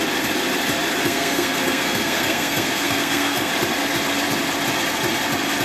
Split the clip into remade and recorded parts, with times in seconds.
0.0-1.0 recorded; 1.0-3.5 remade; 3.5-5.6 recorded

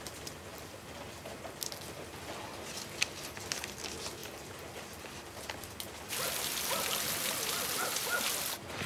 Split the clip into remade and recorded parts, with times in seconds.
0.0-8.9 recorded

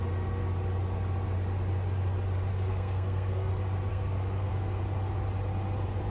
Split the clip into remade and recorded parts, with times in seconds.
0.0-2.5 recorded; 2.5-3.5 remade; 3.5-3.9 recorded; 3.9-4.5 remade; 4.5-6.1 recorded

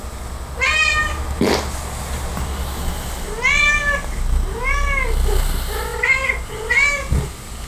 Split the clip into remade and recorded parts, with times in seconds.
0.0-7.7 recorded

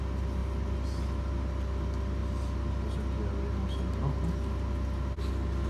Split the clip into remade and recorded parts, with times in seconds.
0.0-5.7 recorded

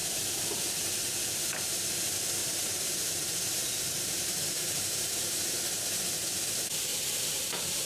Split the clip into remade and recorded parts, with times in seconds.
0.0-2.4 recorded; 2.4-5.6 remade; 5.6-6.9 recorded; 6.9-7.8 remade

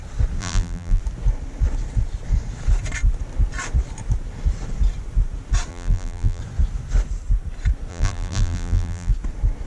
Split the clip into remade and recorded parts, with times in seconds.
0.0-0.4 recorded; 0.4-1.0 remade; 1.0-5.7 recorded; 5.7-6.4 remade; 6.4-7.9 recorded; 7.9-9.1 remade; 9.1-9.7 recorded

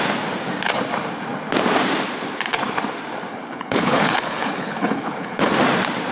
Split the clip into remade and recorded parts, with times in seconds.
0.0-3.3 recorded; 3.3-5.5 remade; 5.5-6.1 recorded